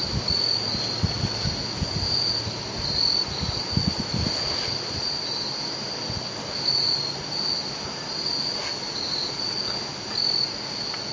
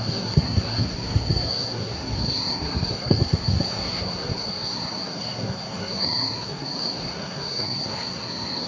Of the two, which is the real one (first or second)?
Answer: first